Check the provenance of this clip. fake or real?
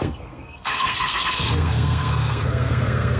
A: fake